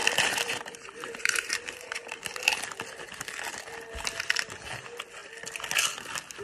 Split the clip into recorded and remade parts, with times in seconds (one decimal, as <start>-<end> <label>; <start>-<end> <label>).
0.0-2.2 remade; 2.2-6.4 recorded